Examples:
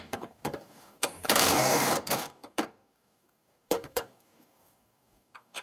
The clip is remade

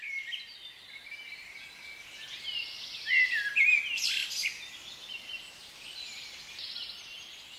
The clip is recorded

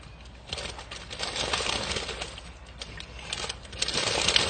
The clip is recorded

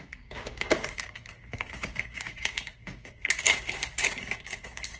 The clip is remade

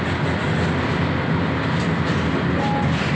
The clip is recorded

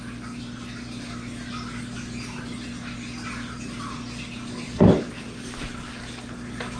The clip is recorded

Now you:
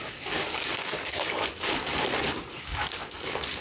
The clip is remade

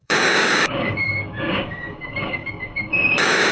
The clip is remade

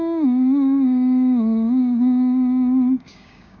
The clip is remade